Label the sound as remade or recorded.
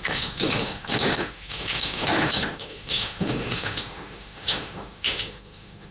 remade